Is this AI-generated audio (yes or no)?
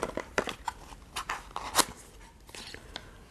no